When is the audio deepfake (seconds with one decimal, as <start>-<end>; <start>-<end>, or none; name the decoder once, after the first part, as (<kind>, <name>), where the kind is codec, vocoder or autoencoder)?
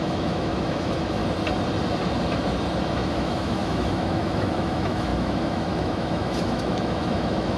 0.0-1.2 (autoencoder, DAC-VAE); 2.9-7.6